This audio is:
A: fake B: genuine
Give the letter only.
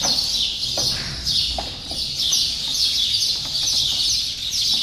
B